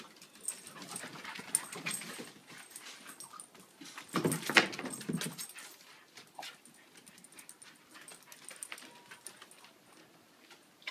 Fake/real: real